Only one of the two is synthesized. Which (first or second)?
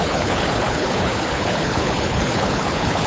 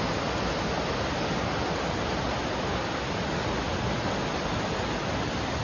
first